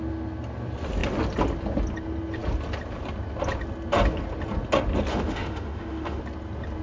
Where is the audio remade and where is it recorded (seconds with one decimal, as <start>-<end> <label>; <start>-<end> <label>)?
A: 0.0-5.1 recorded; 5.1-6.2 remade; 6.2-6.8 recorded